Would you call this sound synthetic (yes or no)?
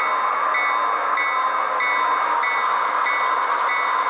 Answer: no